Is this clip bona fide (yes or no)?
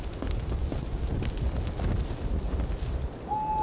yes